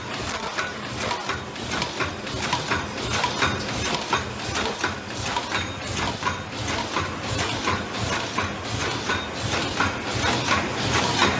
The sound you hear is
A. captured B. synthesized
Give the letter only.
A